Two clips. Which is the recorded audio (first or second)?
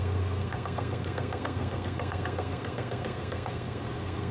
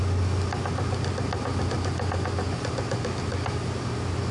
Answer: second